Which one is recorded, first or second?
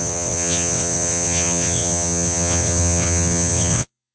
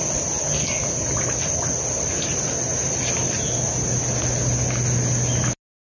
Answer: second